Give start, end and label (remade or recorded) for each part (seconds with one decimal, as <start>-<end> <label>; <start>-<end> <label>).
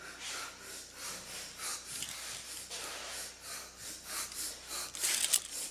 0.0-5.7 recorded